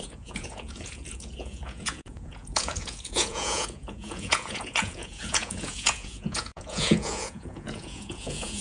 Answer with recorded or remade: remade